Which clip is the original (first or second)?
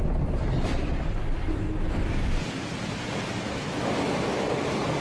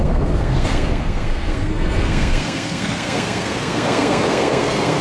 first